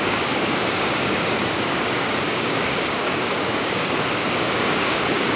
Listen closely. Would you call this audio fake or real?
fake